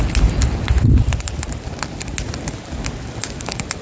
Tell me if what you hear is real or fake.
real